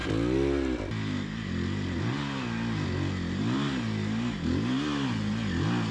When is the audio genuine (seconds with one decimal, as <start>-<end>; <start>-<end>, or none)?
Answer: 0.0-5.9